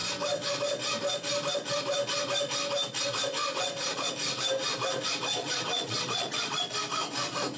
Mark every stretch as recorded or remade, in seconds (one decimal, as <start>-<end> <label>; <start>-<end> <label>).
0.0-3.4 recorded; 3.4-4.1 remade; 4.1-5.4 recorded; 5.4-6.6 remade; 6.6-7.6 recorded